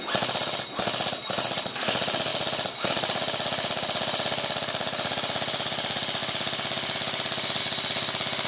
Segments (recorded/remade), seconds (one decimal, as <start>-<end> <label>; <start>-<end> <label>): 0.0-8.5 recorded